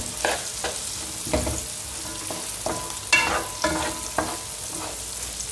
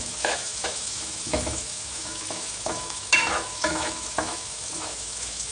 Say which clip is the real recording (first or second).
first